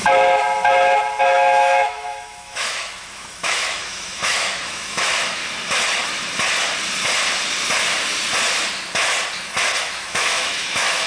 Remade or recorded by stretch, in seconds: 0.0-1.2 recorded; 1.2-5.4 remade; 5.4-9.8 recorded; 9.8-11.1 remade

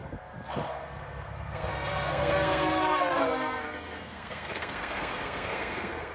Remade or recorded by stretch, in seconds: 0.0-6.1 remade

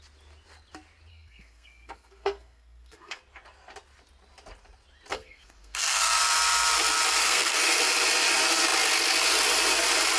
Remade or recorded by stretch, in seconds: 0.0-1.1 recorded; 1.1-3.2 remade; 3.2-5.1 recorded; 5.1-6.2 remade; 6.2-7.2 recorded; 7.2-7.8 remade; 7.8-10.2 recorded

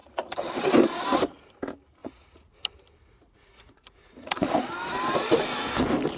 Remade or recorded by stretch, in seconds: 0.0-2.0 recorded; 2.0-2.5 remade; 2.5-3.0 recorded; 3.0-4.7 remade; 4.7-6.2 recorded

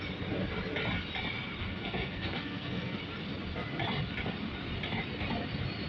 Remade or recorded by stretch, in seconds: 0.0-1.6 recorded; 1.6-3.0 remade; 3.0-5.9 recorded

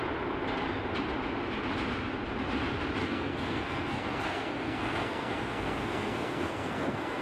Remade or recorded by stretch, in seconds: 0.0-3.0 recorded; 3.0-7.2 remade